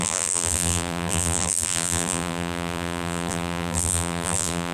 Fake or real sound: fake